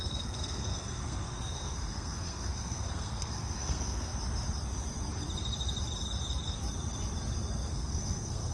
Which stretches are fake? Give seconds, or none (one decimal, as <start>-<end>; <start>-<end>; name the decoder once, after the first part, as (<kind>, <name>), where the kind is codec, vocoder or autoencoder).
0.0-4.1 (codec, SNAC); 7.7-8.5